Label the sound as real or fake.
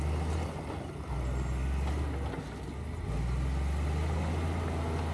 real